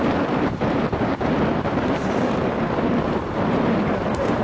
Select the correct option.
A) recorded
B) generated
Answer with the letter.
B